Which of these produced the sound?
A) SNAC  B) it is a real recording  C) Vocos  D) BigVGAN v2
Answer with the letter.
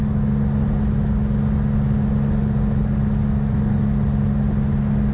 B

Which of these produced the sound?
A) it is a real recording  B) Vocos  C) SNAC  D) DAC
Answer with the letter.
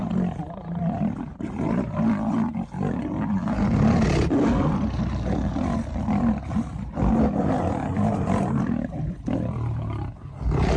A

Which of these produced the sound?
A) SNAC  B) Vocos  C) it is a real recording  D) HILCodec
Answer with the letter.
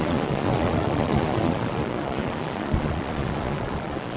B